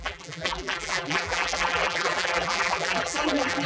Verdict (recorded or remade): remade